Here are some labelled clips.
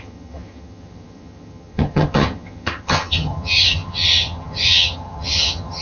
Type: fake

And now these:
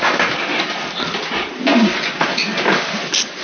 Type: real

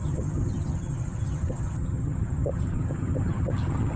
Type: fake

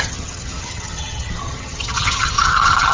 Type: fake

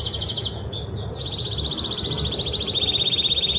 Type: real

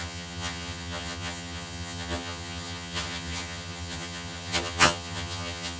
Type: fake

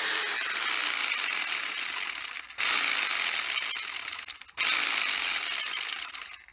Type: real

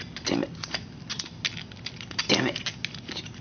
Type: real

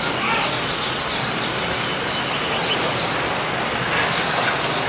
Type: real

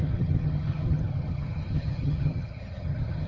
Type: fake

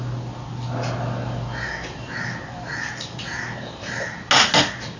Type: real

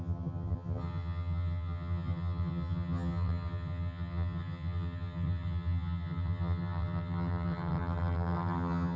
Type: fake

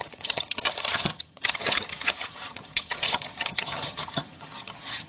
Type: fake